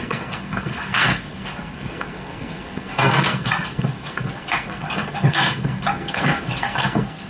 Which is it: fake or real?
fake